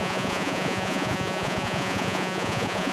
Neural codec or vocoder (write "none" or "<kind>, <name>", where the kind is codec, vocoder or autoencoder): vocoder, Vocos